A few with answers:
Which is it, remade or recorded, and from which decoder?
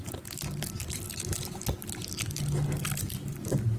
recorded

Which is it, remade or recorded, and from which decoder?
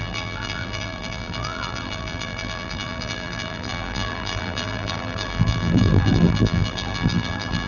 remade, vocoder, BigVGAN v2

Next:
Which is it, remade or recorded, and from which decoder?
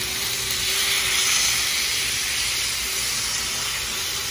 recorded